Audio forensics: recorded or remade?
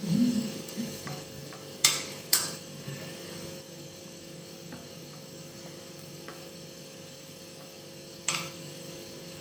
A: remade